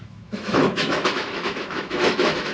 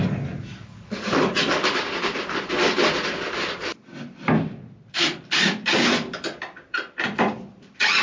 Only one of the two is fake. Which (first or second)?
first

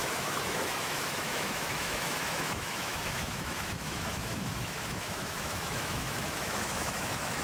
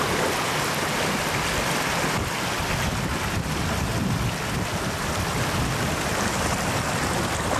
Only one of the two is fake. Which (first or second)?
first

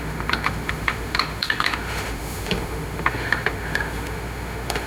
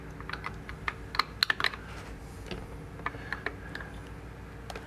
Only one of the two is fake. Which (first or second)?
first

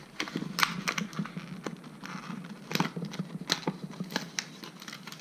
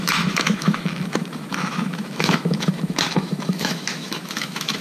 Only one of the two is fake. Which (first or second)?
second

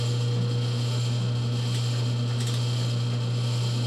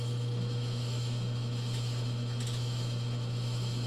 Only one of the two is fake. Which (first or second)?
second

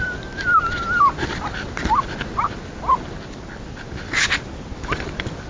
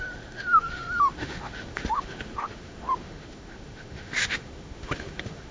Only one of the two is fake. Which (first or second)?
second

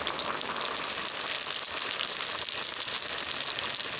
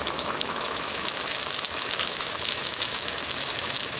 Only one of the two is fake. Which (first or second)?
second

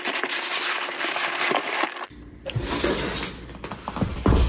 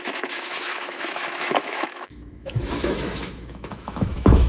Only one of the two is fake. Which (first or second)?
second